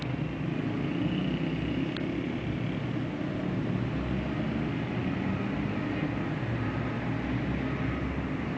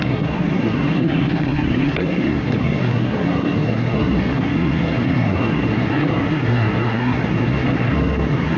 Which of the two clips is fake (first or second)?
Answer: second